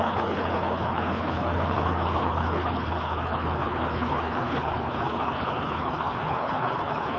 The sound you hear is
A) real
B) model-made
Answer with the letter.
B